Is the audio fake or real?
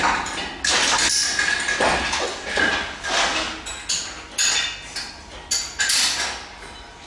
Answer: real